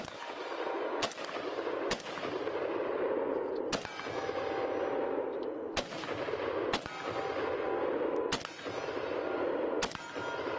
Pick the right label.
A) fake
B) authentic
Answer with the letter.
B